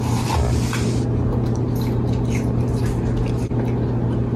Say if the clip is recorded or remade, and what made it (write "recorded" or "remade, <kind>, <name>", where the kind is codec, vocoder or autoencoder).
recorded